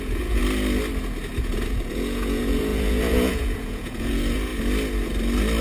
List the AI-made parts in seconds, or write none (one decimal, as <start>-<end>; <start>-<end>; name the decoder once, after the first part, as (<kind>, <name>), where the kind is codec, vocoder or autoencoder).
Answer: 0.0-0.4 (vocoder, Vocos); 1.4-4.5